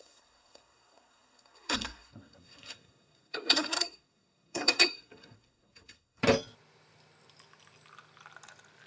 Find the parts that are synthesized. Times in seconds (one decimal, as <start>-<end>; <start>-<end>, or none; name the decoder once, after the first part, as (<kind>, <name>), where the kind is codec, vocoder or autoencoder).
0.0-6.2 (codec, SNAC)